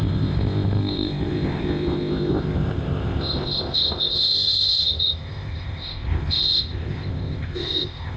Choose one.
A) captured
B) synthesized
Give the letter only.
B